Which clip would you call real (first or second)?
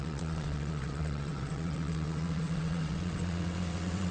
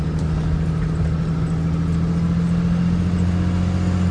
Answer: second